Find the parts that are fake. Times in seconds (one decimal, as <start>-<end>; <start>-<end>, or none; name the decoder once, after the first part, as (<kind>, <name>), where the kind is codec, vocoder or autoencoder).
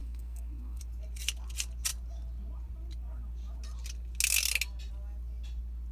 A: 0.0-0.8 (codec, SNAC)